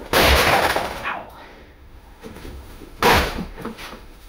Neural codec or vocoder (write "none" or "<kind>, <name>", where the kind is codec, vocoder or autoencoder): autoencoder, DAC-VAE